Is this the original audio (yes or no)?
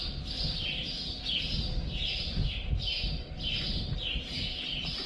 yes